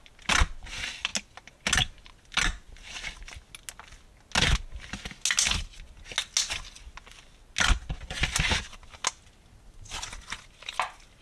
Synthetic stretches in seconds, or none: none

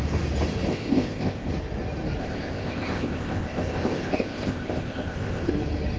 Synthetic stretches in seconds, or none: 0.7-1.5 (codec, ZipCodec); 2.2-5.5

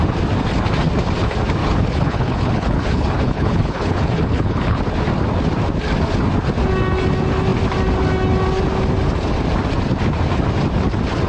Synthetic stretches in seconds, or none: 1.6-4.8 (codec, HILCodec)

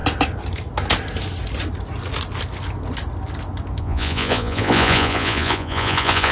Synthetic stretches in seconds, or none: 3.8-6.3 (vocoder, Vocos)

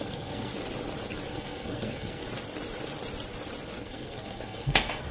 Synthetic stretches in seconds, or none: 0.0-0.5 (codec, SNAC); 1.3-2.2; 3.8-5.1